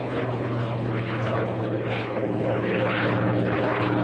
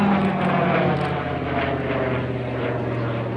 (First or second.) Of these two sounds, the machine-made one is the first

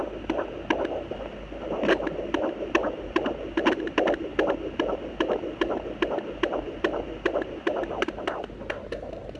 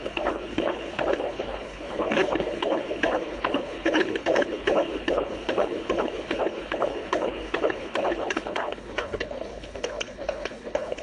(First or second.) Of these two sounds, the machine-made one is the second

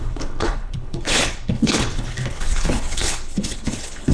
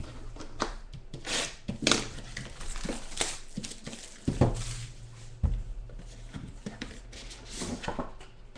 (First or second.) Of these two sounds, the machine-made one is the first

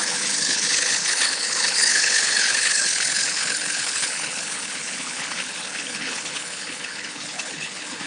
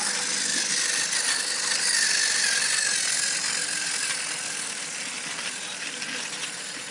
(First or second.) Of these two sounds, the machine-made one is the first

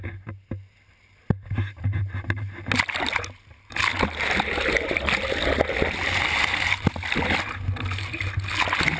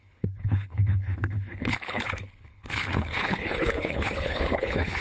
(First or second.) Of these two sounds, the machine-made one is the second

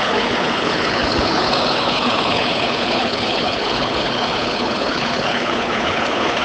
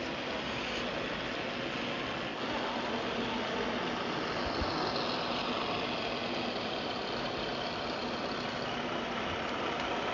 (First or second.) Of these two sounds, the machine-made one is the first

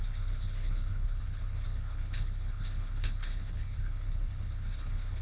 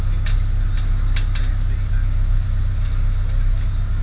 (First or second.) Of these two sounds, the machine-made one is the first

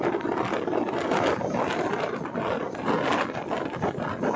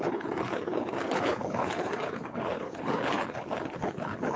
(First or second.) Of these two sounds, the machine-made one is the second